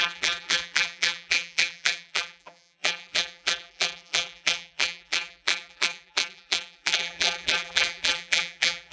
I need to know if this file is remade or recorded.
remade